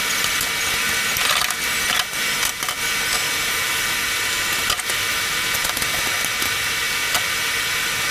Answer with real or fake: real